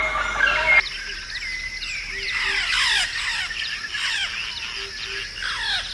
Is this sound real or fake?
real